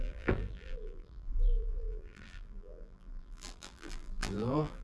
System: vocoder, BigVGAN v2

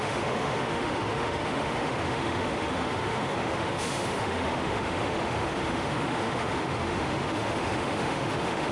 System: autoencoder, DAC-VAE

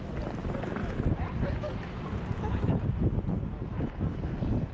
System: none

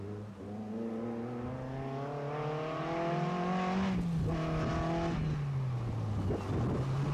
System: none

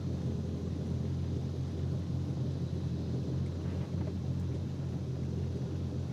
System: none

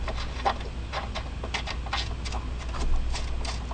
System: none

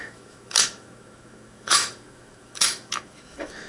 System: autoencoder, DAC-VAE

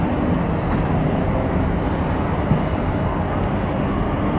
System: none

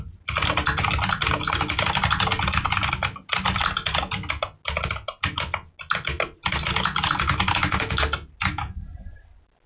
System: none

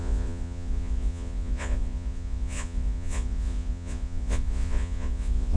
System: vocoder, Vocos